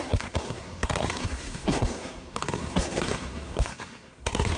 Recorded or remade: remade